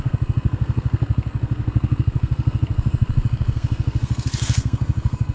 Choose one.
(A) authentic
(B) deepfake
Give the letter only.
B